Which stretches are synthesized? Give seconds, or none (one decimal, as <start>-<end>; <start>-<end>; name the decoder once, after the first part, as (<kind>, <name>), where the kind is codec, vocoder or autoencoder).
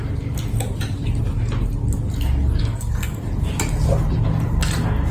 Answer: 2.6-3.2 (codec, SNAC)